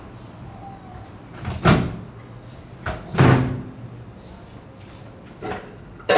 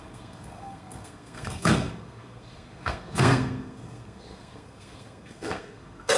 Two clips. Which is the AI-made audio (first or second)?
second